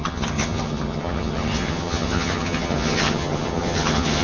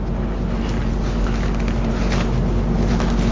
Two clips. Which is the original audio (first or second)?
second